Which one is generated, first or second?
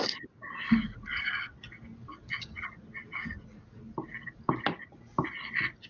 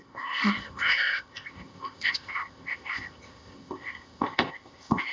second